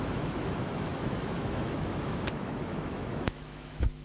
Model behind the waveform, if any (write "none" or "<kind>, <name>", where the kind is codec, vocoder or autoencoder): autoencoder, DAC-VAE